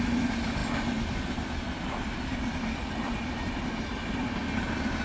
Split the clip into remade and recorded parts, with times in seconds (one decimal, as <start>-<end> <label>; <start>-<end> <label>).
0.0-5.0 recorded